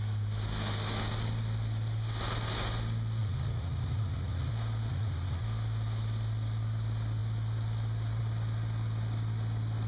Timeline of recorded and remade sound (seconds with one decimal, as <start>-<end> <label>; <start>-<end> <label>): 0.0-3.2 recorded; 3.2-4.5 remade; 4.5-4.9 recorded; 4.9-5.4 remade; 5.4-9.9 recorded